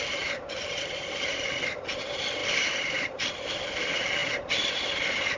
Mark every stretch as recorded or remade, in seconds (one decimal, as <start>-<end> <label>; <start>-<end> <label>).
0.0-2.4 recorded; 2.4-3.3 remade; 3.3-5.4 recorded